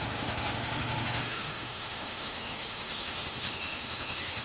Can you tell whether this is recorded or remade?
remade